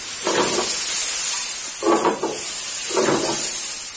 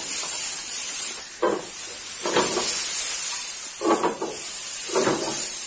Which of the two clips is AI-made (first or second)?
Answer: second